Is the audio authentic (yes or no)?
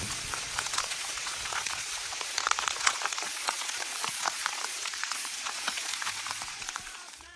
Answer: no